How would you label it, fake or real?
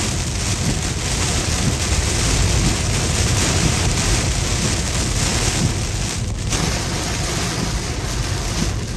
real